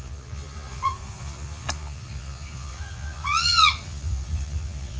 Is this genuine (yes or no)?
no